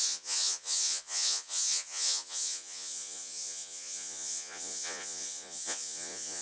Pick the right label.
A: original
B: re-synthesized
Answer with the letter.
B